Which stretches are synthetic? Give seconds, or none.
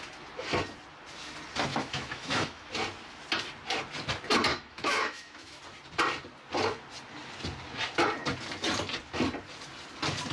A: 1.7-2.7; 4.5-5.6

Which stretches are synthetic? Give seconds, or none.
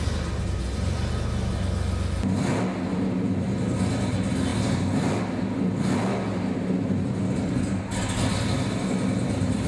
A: none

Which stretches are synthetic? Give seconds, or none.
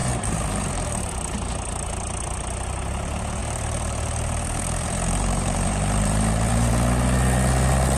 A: 0.0-1.1; 3.4-6.7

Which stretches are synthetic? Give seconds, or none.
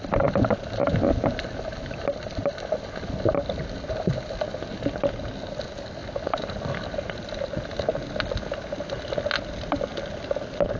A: none